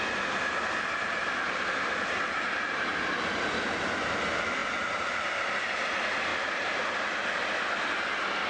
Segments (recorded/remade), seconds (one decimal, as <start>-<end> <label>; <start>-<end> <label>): 0.0-6.3 recorded; 6.3-6.8 remade; 6.8-8.5 recorded